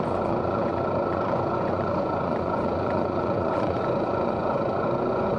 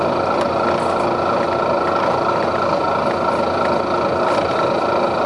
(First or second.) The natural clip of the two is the second